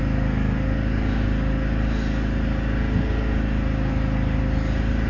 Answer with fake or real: real